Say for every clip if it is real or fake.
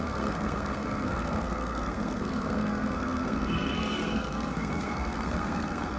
fake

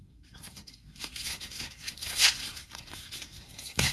fake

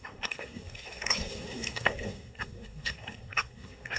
fake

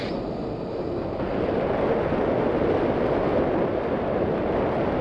real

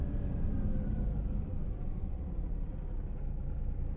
real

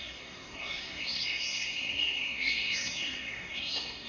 fake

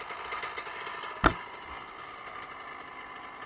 real